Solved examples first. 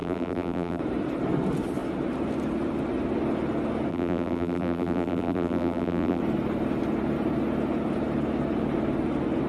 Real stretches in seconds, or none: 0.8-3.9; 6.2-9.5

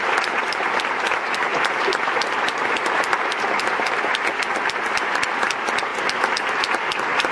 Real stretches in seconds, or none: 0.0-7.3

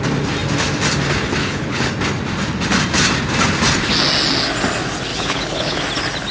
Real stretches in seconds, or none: 0.0-1.4; 1.9-5.1; 5.8-6.3